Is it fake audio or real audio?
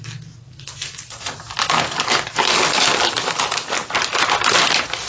real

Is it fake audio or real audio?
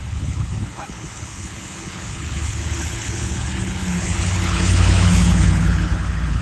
fake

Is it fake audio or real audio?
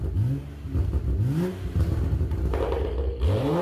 real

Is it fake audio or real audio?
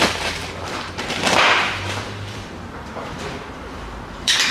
fake